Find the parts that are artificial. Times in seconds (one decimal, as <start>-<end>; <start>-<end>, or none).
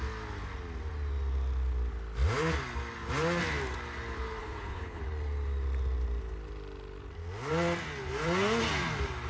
4.4-5.0